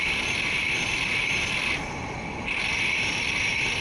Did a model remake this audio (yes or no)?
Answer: no